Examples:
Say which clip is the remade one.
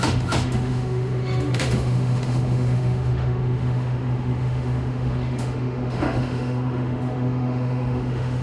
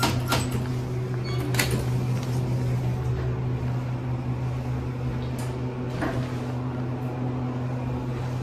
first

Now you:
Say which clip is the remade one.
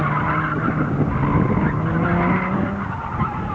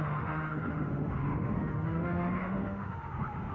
second